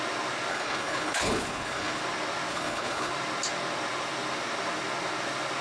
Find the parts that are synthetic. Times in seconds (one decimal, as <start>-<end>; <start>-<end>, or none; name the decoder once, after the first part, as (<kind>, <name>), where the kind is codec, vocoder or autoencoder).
0.5-2.0 (codec, HILCodec); 2.5-3.1